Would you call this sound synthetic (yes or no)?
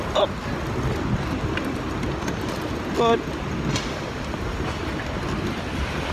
no